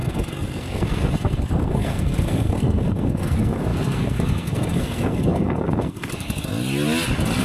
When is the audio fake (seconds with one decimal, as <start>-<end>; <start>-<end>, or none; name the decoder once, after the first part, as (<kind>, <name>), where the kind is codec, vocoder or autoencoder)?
0.0-6.5 (codec, SNAC)